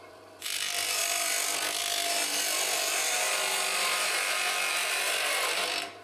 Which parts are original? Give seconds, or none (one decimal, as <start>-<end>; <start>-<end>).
2.2-6.0